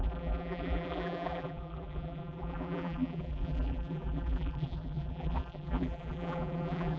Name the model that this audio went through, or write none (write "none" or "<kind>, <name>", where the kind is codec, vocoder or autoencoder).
vocoder, BigVGAN v2